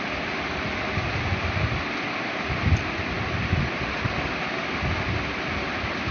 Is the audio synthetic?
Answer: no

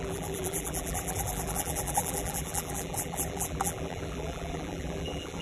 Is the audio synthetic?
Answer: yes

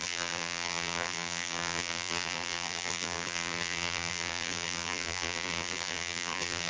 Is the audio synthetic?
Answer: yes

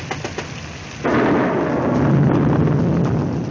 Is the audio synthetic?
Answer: no